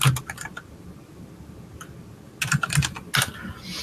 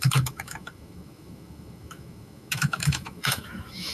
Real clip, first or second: first